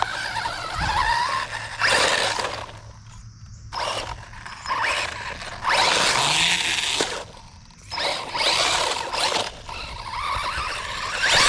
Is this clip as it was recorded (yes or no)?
yes